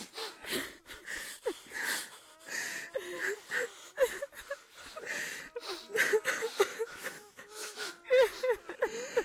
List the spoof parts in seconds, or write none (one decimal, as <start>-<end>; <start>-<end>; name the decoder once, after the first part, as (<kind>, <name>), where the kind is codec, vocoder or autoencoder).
6.7-7.9 (autoencoder, DAC-VAE)